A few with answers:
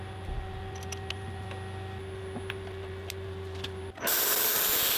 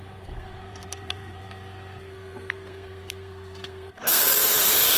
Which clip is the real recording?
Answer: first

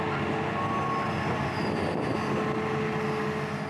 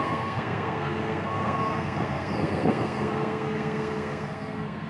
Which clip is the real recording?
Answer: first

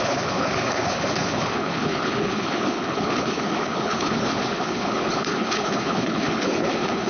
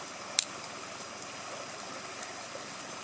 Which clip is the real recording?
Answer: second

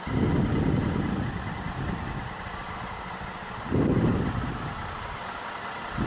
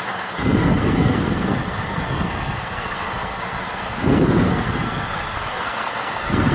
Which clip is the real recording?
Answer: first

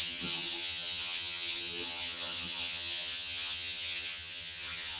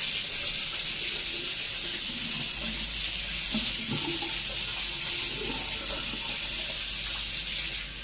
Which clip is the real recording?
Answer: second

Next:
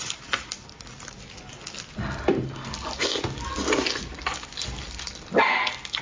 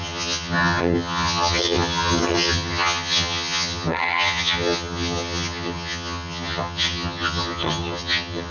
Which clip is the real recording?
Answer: first